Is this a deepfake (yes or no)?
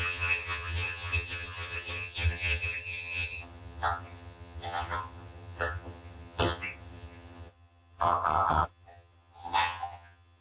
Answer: yes